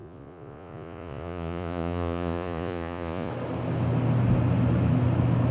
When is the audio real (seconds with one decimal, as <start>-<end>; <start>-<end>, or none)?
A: 3.3-5.5